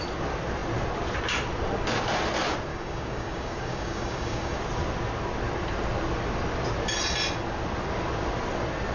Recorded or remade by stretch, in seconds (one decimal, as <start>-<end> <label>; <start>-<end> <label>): 0.0-2.7 recorded; 2.7-4.6 remade; 4.6-8.9 recorded